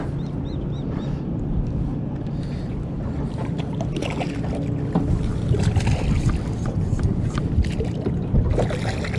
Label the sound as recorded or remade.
recorded